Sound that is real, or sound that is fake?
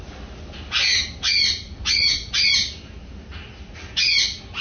real